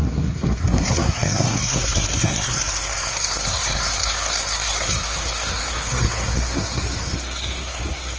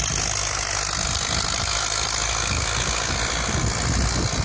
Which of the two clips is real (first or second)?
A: second